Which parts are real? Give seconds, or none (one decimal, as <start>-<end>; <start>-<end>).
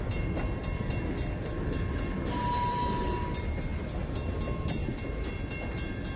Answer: 0.0-6.2